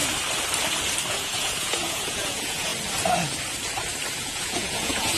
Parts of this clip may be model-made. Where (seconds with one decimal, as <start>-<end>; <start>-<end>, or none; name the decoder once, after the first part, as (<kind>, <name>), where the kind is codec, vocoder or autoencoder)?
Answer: 1.1-2.7 (vocoder, Vocos); 4.2-5.2